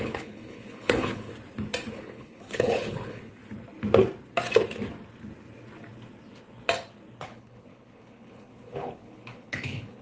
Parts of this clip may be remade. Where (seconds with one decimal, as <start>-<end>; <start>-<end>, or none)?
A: 0.0-1.3; 1.9-3.4; 7.2-10.0